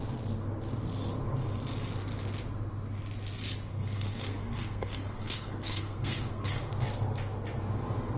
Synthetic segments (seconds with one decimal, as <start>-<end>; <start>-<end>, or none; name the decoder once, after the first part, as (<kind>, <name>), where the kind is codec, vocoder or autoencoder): 3.7-6.7 (codec, SNAC)